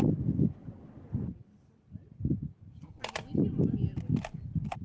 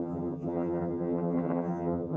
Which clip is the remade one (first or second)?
second